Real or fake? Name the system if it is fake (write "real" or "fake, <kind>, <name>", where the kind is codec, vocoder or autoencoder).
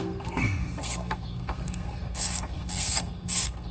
fake, codec, SNAC